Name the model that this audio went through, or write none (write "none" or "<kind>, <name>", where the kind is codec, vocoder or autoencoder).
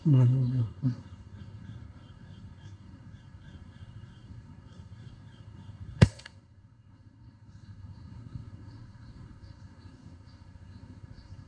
codec, SNAC